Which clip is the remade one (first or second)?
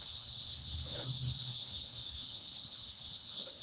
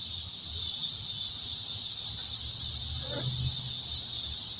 first